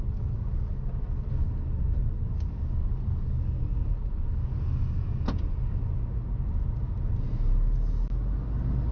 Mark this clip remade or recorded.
recorded